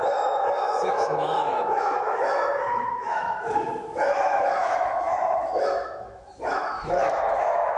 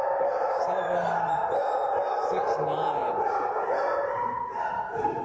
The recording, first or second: second